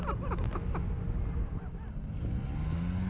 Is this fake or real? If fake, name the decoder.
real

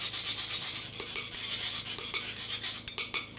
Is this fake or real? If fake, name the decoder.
real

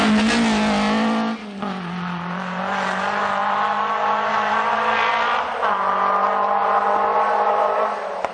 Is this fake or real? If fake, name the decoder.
real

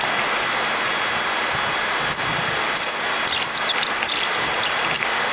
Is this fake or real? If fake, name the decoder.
real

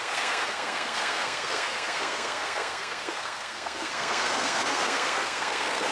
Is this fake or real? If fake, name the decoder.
fake, codec, SNAC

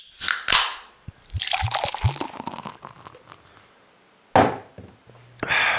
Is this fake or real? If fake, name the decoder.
real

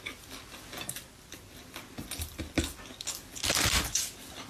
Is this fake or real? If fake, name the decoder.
real